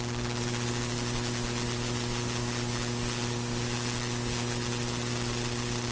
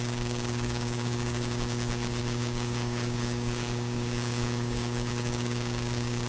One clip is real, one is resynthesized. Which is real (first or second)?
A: first